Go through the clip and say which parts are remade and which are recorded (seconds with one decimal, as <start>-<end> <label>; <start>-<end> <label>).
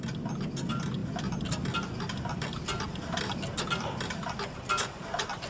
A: 0.0-5.5 recorded